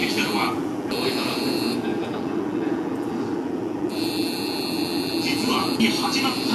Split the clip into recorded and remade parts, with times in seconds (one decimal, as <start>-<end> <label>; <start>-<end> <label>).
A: 0.0-1.0 remade; 1.0-1.9 recorded; 1.9-5.8 remade; 5.8-6.5 recorded